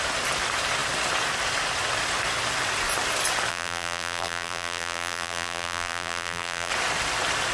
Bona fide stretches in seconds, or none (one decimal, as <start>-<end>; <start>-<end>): 0.0-3.5; 6.7-7.5